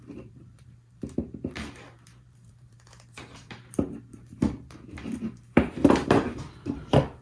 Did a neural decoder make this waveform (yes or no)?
yes